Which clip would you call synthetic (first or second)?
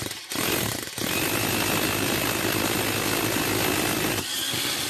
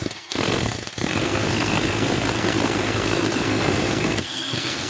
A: second